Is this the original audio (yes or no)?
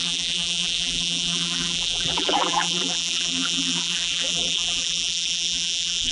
no